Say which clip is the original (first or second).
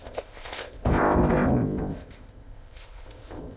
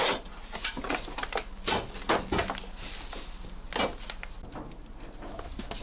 second